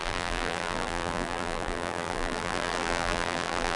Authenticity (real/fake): fake